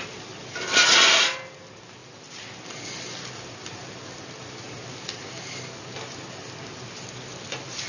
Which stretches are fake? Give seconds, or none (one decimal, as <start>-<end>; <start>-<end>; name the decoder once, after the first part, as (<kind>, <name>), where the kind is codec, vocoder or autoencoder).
none